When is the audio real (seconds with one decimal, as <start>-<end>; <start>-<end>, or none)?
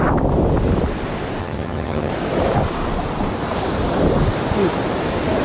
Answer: 0.0-1.4; 2.1-5.4